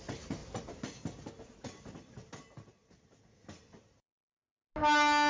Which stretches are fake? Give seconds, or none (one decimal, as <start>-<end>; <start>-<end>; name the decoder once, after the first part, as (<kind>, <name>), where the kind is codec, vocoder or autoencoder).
none